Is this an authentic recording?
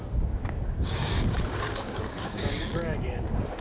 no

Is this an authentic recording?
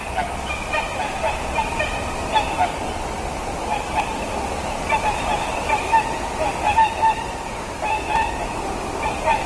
yes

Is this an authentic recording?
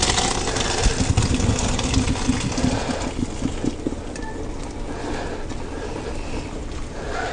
yes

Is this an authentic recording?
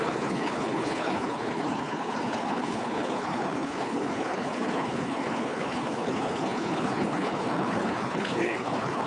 no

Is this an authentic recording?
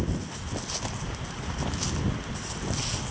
yes